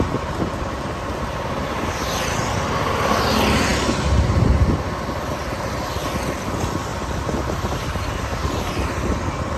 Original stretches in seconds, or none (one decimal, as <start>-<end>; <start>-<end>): 0.0-9.6